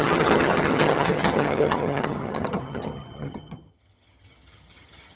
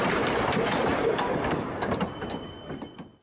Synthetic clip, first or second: first